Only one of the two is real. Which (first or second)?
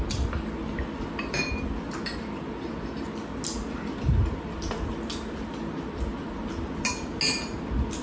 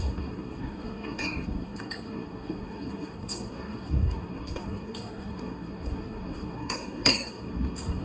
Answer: first